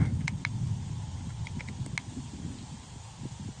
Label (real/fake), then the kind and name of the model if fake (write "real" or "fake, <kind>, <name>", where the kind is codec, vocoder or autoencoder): real